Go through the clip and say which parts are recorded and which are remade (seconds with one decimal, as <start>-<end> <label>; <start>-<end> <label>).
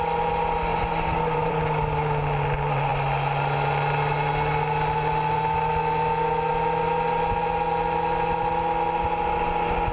0.0-0.7 recorded; 0.7-1.6 remade; 1.6-9.9 recorded